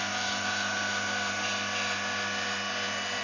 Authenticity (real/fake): real